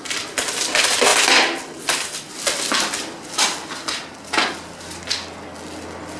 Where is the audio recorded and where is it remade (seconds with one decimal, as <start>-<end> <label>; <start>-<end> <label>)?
0.0-6.2 recorded

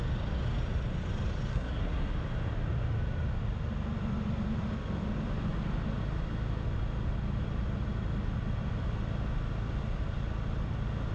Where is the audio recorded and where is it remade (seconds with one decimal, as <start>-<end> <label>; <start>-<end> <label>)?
0.0-1.5 recorded; 1.5-2.1 remade; 2.1-11.1 recorded

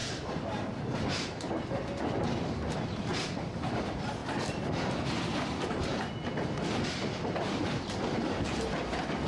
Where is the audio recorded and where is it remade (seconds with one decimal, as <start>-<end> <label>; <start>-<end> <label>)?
0.0-2.7 recorded; 2.7-9.3 remade

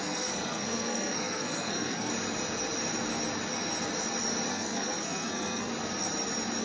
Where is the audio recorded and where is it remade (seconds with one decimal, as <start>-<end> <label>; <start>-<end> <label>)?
0.0-2.1 remade; 2.1-4.5 recorded; 4.5-5.7 remade; 5.7-6.6 recorded